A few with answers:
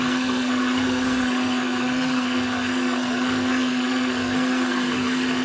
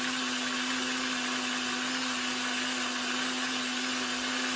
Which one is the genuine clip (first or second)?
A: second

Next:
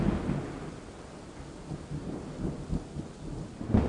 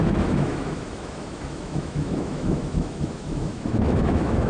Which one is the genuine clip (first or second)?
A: first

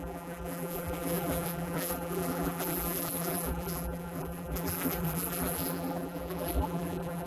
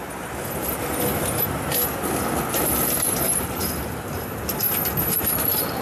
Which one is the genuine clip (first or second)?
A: second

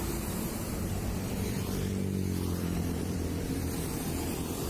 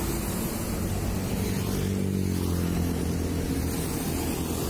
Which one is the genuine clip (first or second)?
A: second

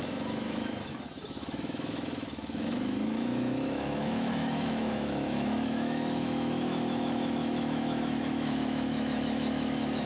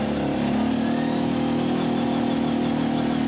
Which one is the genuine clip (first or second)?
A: second